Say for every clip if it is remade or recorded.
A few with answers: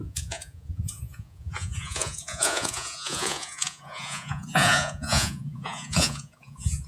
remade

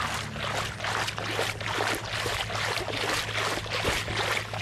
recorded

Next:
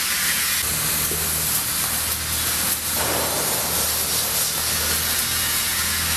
recorded